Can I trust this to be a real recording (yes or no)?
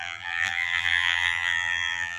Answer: no